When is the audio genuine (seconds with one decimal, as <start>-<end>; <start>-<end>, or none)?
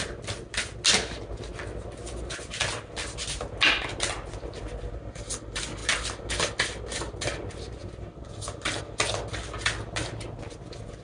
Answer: 0.0-11.0